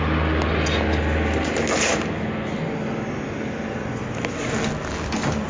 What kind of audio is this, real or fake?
real